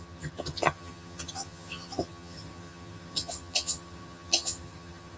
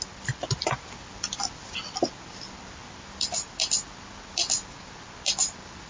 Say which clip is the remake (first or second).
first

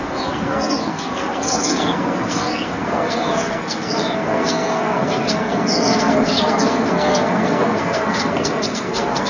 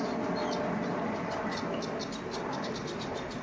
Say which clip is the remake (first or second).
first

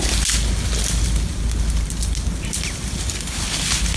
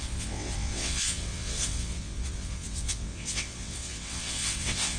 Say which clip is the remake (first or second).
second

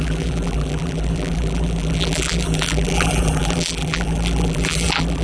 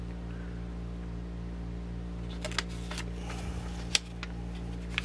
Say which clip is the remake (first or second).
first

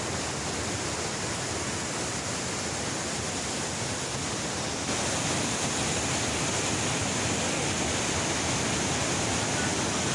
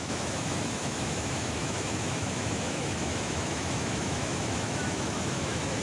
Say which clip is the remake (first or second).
second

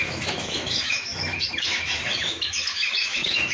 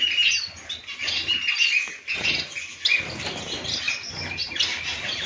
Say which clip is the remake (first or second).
first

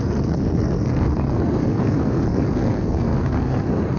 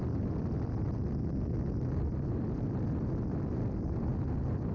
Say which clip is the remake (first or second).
first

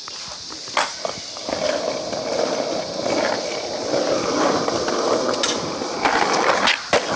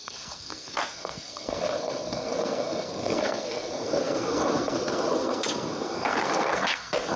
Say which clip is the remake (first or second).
second